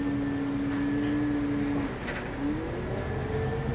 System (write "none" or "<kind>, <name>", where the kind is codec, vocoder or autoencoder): none